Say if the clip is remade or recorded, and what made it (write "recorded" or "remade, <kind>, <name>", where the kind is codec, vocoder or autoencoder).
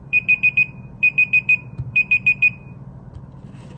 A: remade, vocoder, BigVGAN v2